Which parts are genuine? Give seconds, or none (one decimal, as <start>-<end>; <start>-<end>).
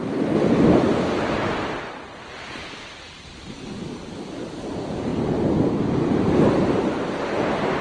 5.1-5.8